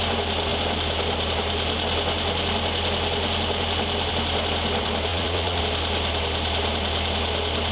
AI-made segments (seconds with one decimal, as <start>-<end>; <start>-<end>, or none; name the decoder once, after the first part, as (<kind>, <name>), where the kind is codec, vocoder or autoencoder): 5.1-5.6 (vocoder, Vocos)